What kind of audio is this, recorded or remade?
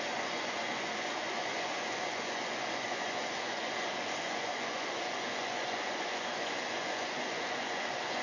remade